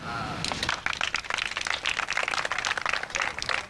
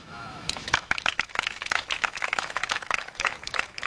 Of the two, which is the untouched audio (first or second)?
first